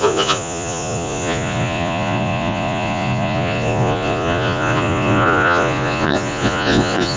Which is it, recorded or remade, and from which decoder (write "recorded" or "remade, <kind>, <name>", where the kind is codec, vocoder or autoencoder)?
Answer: remade, vocoder, Vocos